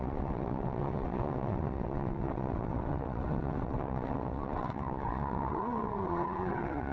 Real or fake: fake